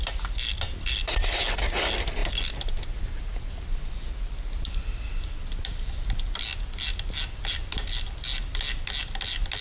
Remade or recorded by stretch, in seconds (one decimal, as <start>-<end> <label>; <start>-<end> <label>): 0.0-9.6 recorded